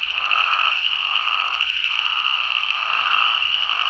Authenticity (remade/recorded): remade